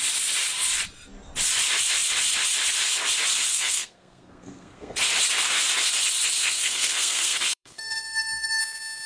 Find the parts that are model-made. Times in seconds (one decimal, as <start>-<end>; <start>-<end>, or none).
3.5-4.9; 6.4-8.6